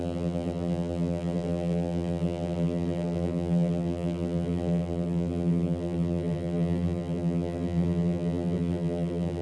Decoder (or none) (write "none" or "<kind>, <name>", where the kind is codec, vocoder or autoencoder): vocoder, BigVGAN v2